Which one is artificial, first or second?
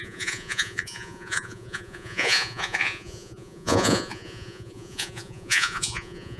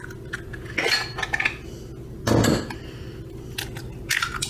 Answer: first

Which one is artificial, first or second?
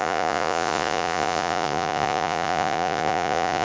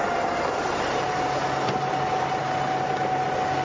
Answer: first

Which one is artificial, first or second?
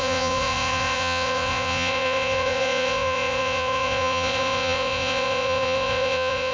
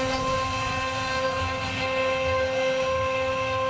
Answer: first